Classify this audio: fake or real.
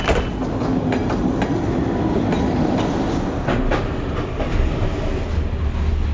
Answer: real